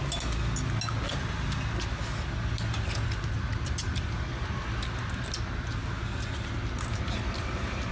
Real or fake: real